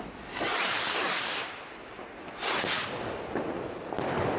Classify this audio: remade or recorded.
recorded